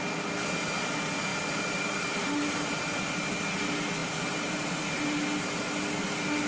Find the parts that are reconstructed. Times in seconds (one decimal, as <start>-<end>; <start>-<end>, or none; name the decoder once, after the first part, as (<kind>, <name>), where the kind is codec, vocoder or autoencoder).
1.3-3.3 (vocoder, BigVGAN v2); 4.0-4.8